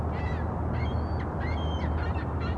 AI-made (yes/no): no